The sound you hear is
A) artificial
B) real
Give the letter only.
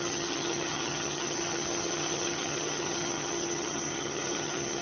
A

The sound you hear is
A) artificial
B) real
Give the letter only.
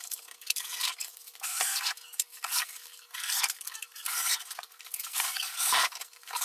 A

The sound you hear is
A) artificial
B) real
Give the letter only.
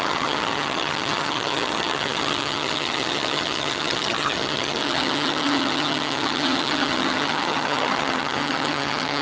A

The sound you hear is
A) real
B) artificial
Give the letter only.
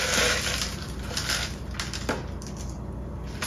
A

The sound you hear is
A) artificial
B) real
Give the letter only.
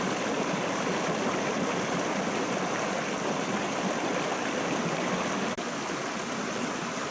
B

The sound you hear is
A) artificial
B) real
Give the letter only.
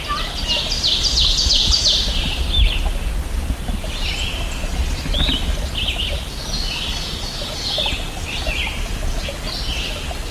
B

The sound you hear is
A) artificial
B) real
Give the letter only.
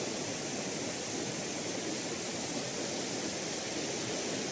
B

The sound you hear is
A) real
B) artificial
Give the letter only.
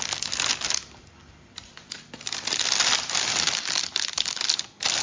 A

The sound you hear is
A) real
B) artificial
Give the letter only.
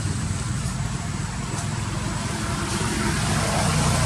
B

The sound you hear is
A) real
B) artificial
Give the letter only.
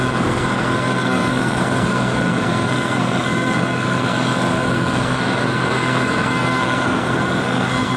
B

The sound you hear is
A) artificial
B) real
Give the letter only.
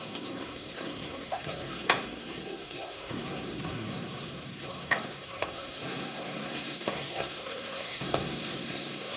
A